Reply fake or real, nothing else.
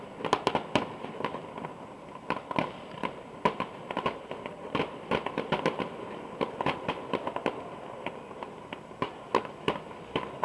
fake